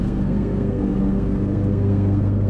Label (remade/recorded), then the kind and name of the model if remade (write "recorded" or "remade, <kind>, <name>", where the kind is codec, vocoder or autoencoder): remade, codec, SNAC